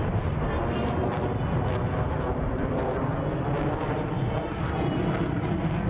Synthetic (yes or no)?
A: no